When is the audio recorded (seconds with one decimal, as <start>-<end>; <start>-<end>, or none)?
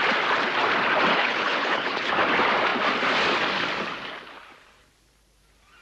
0.0-1.1; 2.1-5.8